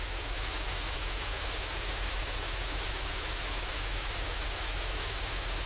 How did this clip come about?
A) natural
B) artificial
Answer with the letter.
B